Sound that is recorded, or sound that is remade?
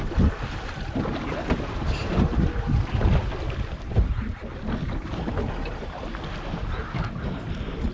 recorded